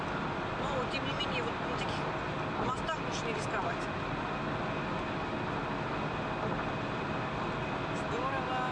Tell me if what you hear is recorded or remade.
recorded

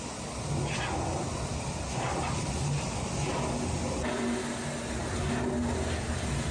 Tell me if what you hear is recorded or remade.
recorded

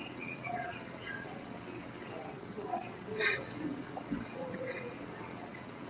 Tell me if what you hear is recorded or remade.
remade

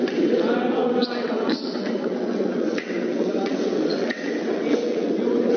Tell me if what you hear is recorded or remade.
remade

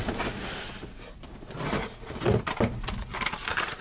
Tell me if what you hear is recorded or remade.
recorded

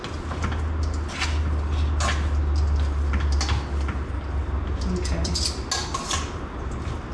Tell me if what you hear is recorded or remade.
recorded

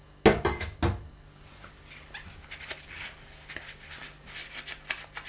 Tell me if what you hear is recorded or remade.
recorded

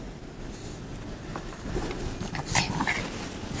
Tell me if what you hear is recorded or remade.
recorded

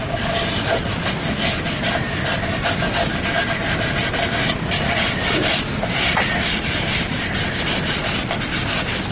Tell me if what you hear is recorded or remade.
recorded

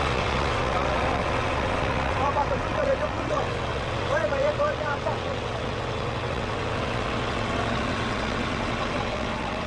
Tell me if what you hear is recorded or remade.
remade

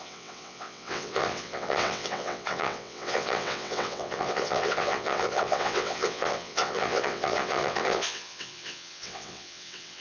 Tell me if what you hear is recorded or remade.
remade